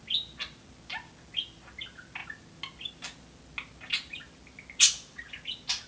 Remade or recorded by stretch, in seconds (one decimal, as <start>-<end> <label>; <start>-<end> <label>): 0.0-5.9 recorded